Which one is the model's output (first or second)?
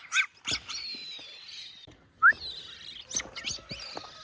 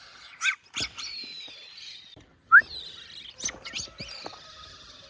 second